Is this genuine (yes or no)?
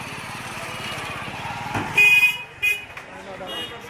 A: yes